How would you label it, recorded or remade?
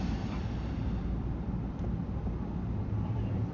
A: remade